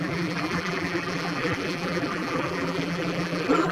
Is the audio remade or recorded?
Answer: remade